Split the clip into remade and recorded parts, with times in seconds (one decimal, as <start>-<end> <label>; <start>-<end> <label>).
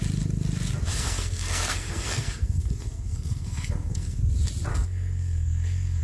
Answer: 0.0-0.9 recorded; 0.9-4.2 remade; 4.2-4.7 recorded; 4.7-6.0 remade